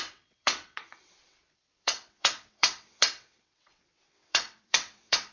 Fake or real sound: fake